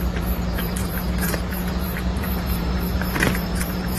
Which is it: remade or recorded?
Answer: remade